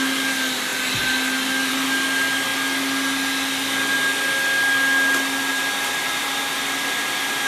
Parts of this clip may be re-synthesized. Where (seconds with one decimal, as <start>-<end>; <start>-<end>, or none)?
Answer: 5.5-6.2